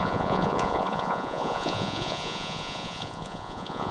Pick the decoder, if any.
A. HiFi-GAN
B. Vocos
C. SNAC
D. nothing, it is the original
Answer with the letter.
B